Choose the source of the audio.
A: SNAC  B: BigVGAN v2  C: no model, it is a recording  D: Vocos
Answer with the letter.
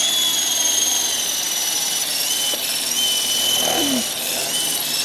C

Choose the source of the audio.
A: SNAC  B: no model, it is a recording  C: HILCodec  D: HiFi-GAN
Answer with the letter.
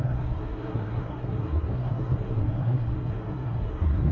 A